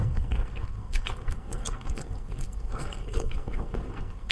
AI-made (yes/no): yes